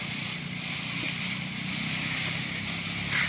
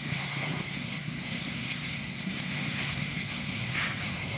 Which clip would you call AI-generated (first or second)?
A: second